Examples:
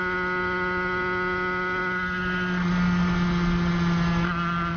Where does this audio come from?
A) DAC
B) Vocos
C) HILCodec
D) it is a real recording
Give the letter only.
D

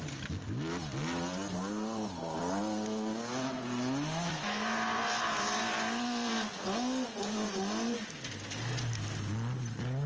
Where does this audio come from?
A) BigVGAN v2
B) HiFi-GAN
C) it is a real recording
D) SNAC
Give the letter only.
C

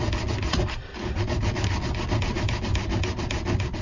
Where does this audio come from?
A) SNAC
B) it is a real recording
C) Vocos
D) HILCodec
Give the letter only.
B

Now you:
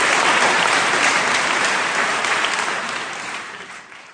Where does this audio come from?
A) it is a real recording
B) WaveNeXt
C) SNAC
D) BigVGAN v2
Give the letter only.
D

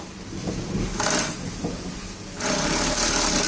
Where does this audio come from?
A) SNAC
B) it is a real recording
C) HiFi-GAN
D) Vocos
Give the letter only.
B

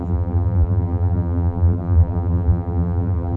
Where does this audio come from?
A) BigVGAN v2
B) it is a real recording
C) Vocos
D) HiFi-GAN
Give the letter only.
A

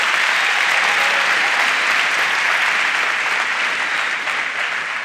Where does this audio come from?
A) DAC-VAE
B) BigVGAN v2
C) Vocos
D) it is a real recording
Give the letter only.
D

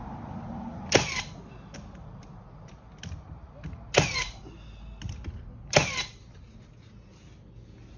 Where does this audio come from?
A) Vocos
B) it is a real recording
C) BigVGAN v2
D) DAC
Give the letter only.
B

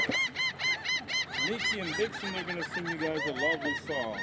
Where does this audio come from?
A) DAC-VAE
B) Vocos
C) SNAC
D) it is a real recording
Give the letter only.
D